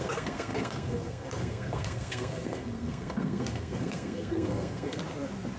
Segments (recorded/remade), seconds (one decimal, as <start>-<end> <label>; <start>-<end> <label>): 0.0-5.0 remade; 5.0-5.6 recorded